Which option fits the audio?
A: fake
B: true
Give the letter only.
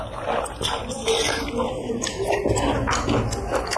A